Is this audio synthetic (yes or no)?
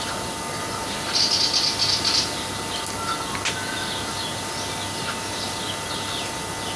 no